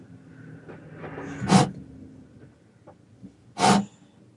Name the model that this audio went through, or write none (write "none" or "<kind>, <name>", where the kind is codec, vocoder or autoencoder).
none